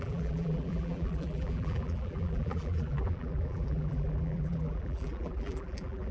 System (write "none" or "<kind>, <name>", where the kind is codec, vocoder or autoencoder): vocoder, BigVGAN v2